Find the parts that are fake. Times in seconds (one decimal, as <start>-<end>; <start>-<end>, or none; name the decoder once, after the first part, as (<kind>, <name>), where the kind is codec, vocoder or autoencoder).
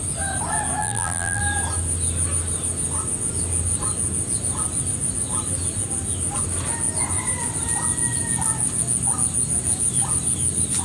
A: 0.8-1.4 (vocoder, BigVGAN v2)